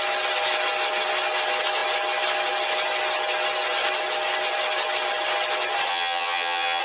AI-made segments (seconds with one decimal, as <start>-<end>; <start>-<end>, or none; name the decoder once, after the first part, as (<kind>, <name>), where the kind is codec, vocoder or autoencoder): 5.9-6.8 (vocoder, HiFi-GAN)

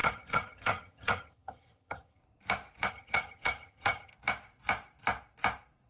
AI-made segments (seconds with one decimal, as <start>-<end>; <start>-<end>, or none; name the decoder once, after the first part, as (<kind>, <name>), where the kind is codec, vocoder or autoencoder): 0.0-2.2 (vocoder, HiFi-GAN); 2.9-4.1

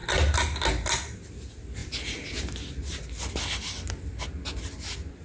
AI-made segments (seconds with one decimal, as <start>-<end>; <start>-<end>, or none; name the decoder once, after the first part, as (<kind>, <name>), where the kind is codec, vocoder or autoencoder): none

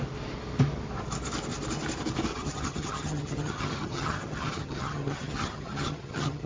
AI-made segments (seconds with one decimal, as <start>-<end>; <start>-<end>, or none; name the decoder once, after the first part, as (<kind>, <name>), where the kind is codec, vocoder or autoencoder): 2.3-6.5 (vocoder, HiFi-GAN)

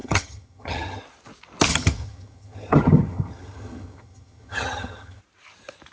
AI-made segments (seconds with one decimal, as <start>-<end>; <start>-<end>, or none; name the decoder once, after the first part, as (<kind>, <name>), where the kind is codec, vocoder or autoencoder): 0.0-1.0 (vocoder, HiFi-GAN); 1.7-5.2

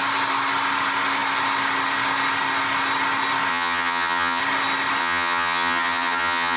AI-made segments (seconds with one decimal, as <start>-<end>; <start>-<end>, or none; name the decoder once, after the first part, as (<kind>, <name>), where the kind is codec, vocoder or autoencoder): 3.5-4.4 (vocoder, HiFi-GAN); 5.0-6.6